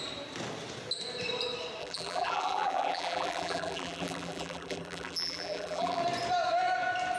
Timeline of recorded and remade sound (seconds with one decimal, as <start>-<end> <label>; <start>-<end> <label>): 0.0-1.8 recorded; 1.8-6.0 remade; 6.0-7.2 recorded

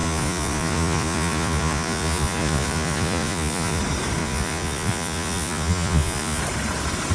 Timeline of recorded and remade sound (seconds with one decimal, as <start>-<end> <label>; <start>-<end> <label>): 0.0-3.8 remade; 3.8-4.2 recorded; 4.2-6.4 remade; 6.4-7.1 recorded

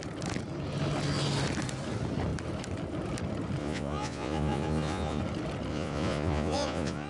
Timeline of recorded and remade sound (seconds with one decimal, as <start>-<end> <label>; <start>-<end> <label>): 0.0-3.6 recorded; 3.6-5.2 remade; 5.2-5.7 recorded; 5.7-7.1 remade

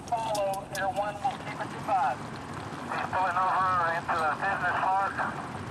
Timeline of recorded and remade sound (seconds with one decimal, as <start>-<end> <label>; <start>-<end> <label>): 0.0-5.7 recorded

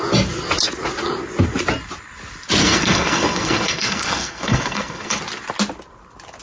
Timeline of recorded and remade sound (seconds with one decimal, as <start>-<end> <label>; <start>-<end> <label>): 0.0-2.6 recorded; 2.6-5.2 remade; 5.2-6.4 recorded